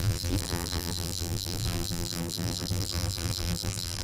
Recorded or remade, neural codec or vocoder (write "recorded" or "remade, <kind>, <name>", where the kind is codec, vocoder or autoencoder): remade, vocoder, BigVGAN v2